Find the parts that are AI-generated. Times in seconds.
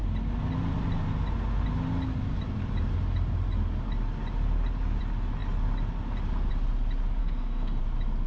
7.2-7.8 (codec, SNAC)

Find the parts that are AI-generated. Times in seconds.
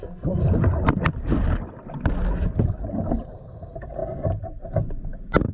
3.3-5.5 (vocoder, BigVGAN v2)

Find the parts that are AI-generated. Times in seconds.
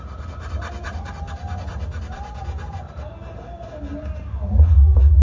none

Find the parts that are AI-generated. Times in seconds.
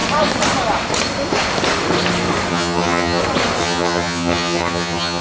2.5-3.2 (vocoder, HiFi-GAN); 3.6-5.2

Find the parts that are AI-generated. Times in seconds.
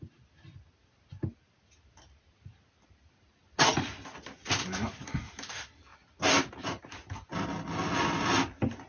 none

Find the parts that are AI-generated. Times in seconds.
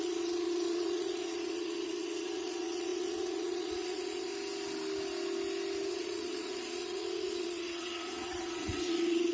0.0-4.3 (vocoder, Vocos); 5.9-9.3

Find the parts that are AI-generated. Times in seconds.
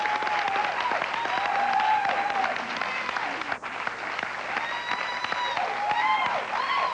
none